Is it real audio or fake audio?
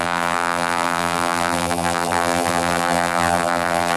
fake